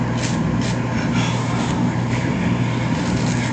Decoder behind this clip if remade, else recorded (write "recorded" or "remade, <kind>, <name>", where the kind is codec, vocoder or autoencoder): recorded